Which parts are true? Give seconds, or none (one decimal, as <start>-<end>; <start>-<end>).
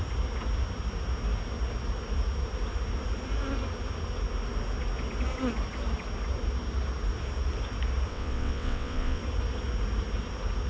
0.0-8.1; 9.2-10.7